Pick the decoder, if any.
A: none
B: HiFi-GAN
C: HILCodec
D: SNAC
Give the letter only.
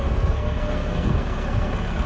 D